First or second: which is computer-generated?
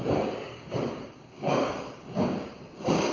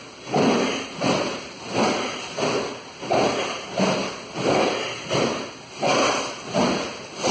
first